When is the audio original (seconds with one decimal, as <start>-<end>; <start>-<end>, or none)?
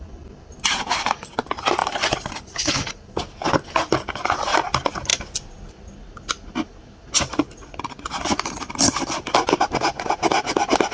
0.0-10.9